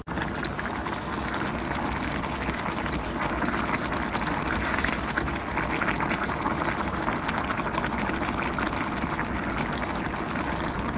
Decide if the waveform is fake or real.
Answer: real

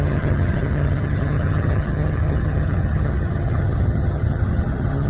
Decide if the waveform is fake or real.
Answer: fake